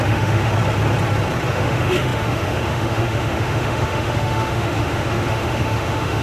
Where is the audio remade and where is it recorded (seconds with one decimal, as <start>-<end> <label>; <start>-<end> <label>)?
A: 0.0-0.5 remade; 0.5-1.5 recorded; 1.5-6.2 remade

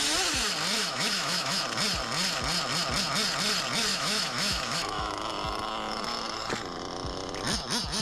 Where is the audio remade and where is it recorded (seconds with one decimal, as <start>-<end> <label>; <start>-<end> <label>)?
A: 0.0-0.8 recorded; 0.8-1.6 remade; 1.6-3.9 recorded; 3.9-5.3 remade; 5.3-8.0 recorded